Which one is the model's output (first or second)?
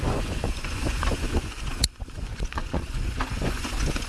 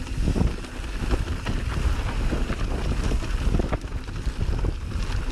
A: first